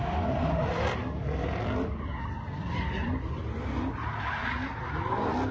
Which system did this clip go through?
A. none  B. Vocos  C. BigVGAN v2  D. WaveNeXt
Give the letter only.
A